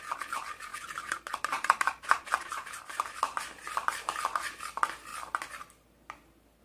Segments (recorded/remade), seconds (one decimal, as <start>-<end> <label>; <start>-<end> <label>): 0.0-0.7 recorded; 0.7-4.6 remade; 4.6-6.6 recorded